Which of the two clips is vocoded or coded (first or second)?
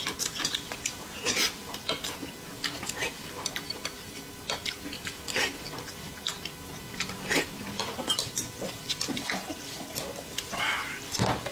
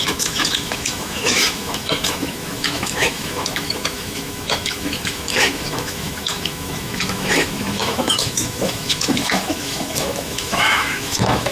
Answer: second